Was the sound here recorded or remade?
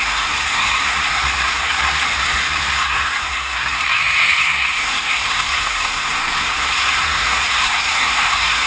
remade